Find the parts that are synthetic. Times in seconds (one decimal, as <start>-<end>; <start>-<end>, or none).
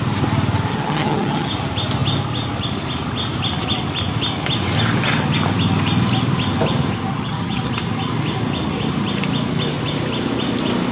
0.7-1.5; 7.1-7.7